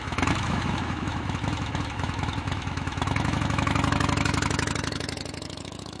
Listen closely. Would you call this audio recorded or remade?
remade